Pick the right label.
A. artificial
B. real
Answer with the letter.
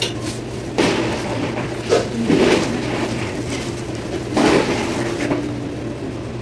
B